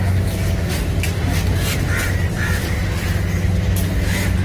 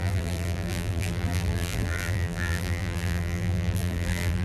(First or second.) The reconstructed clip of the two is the second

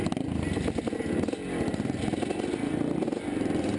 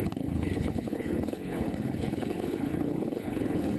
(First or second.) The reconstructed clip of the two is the second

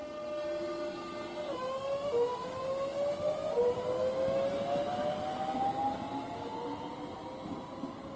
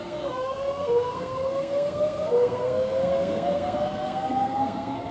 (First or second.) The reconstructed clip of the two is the second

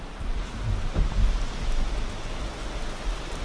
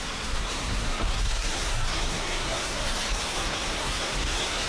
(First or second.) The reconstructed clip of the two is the second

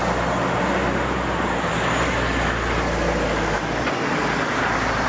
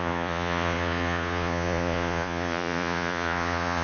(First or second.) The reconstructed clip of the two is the second